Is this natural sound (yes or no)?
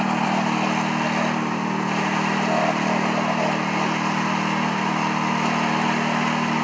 yes